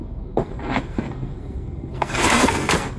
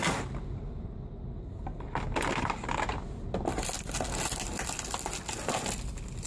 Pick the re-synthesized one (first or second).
first